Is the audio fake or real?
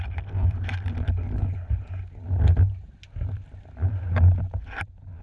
real